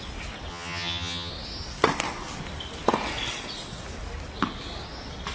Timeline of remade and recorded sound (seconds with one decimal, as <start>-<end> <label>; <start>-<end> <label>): 0.0-0.5 recorded; 0.5-1.3 remade; 1.3-5.3 recorded